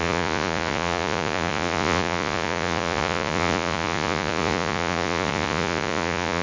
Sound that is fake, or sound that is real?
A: fake